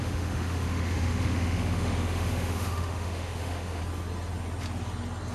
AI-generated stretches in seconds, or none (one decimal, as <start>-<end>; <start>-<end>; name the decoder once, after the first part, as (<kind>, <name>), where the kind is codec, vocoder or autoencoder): 0.0-3.8 (autoencoder, DAC-VAE)